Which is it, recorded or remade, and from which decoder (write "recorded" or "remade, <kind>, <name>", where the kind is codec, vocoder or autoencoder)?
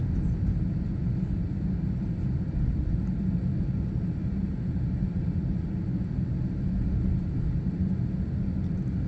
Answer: recorded